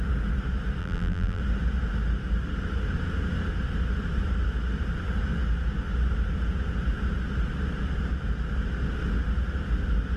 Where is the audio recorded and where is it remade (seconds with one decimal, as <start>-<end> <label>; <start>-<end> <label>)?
0.0-0.8 recorded; 0.8-1.4 remade; 1.4-10.2 recorded